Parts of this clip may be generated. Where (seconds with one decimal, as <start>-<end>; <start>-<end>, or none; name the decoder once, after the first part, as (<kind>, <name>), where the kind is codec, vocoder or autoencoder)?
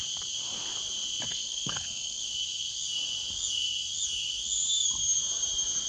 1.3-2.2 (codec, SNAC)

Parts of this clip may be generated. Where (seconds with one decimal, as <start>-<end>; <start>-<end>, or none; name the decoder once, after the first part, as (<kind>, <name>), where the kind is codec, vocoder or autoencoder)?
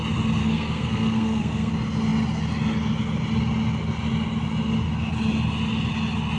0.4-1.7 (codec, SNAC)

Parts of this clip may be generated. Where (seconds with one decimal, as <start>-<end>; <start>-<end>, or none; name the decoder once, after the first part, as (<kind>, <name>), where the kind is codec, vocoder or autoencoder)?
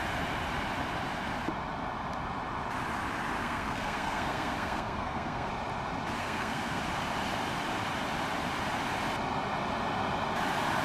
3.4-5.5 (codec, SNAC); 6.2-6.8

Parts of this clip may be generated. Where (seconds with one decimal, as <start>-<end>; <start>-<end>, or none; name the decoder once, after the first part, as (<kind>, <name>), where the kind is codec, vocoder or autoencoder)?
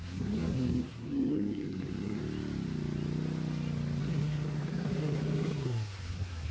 0.0-2.2 (codec, SNAC); 4.0-6.5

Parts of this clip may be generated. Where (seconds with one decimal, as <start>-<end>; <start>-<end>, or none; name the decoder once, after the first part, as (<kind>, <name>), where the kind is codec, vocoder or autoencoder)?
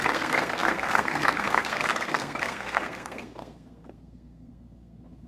0.0-5.3 (codec, SNAC)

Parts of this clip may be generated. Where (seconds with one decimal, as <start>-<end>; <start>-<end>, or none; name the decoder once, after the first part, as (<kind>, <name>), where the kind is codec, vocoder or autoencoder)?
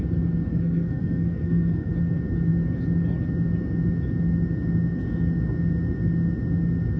0.5-1.9 (codec, SNAC)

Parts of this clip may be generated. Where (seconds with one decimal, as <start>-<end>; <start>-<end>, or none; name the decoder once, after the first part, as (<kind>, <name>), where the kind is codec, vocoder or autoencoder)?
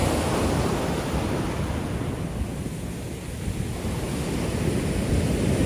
none